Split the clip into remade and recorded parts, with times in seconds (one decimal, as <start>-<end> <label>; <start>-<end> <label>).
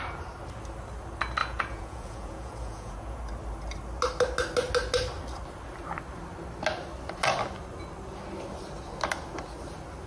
0.0-1.4 recorded; 1.4-3.2 remade; 3.2-10.1 recorded